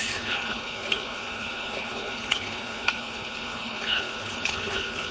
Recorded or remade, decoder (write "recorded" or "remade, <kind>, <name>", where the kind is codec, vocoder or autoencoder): remade, codec, HILCodec